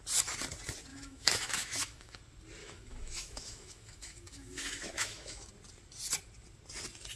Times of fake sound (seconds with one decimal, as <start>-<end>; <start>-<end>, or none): 0.9-2.2; 2.6-5.5